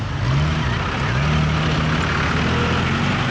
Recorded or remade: recorded